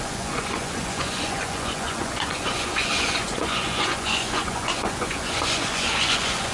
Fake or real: fake